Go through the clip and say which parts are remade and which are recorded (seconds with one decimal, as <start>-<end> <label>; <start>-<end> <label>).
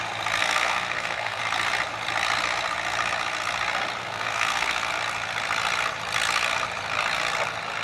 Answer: 0.0-0.4 recorded; 0.4-1.4 remade; 1.4-4.0 recorded; 4.0-4.9 remade; 4.9-7.8 recorded